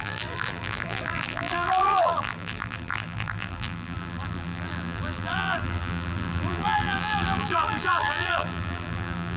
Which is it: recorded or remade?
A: remade